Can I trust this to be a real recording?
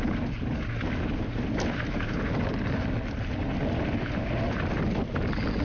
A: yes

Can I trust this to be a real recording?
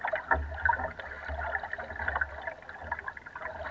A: yes